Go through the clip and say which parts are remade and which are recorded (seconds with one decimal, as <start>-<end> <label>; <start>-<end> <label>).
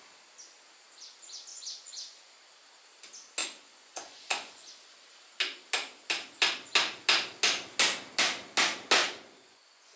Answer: 0.0-1.5 recorded; 1.5-2.4 remade; 2.4-3.4 recorded; 3.4-4.7 remade; 4.7-9.0 recorded; 9.0-10.0 remade